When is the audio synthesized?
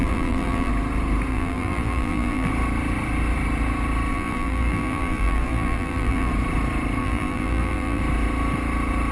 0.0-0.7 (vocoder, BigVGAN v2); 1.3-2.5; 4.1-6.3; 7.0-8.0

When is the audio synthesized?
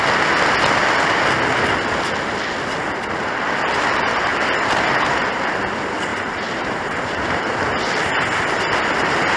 4.3-5.5 (vocoder, BigVGAN v2); 6.1-7.5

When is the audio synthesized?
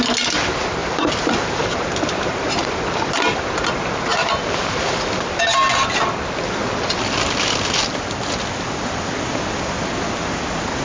0.8-2.3 (vocoder, BigVGAN v2); 4.1-5.4